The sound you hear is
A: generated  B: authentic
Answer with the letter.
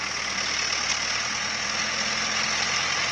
B